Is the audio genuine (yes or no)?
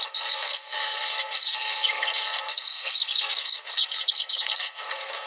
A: no